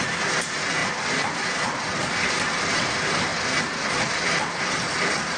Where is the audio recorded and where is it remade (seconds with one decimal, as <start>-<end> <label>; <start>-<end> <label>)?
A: 0.0-5.4 recorded

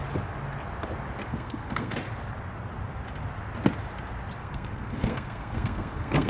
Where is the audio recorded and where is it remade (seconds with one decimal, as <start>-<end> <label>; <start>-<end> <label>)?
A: 0.0-1.3 recorded; 1.3-1.9 remade; 1.9-4.4 recorded; 4.4-6.3 remade